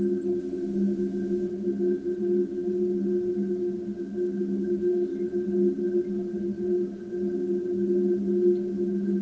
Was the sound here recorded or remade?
recorded